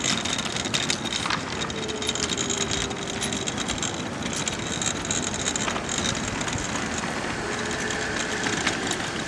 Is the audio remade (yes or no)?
no